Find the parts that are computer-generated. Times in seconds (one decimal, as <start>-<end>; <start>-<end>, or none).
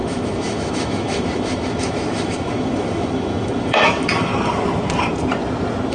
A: 0.0-4.3